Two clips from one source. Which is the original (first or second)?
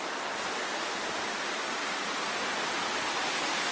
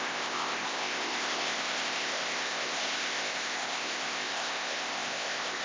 first